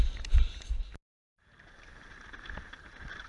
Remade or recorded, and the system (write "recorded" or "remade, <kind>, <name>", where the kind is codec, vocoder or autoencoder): remade, vocoder, BigVGAN v2